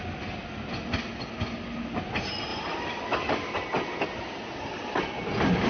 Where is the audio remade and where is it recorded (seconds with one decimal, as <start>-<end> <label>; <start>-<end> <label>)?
0.0-5.7 recorded